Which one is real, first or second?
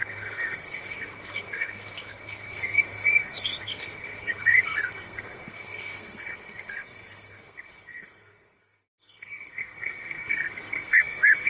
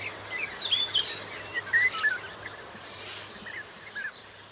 second